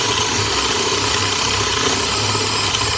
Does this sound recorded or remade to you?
recorded